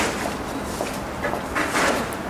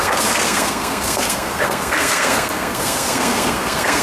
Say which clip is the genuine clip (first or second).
first